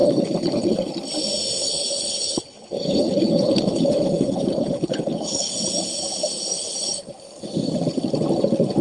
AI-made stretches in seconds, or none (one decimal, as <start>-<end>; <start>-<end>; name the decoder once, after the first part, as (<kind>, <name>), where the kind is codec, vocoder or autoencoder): 0.0-0.9 (codec, HILCodec); 1.6-5.5

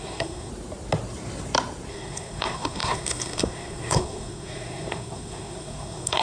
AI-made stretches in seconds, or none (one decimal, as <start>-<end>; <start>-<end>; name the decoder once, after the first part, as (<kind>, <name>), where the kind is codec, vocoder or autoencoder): 0.0-0.5 (codec, SNAC); 1.9-6.2